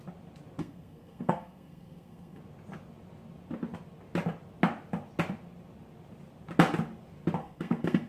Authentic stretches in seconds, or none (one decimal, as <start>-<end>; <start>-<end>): 0.0-0.6; 2.4-7.4